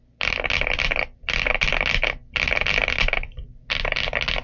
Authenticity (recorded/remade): recorded